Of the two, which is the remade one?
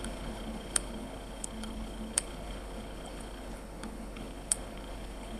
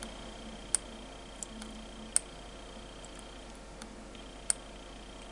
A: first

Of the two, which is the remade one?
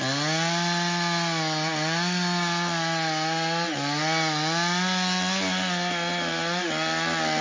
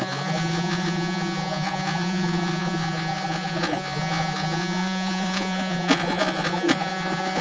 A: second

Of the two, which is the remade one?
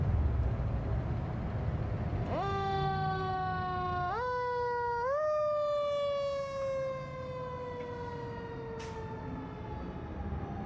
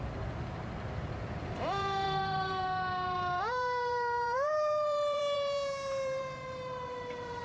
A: second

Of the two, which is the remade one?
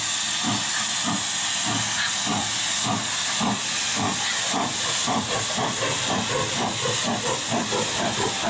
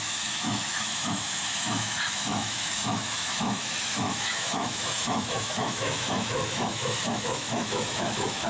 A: second